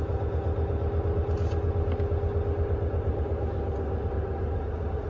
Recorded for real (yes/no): yes